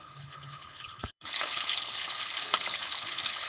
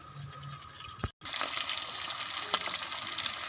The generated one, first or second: first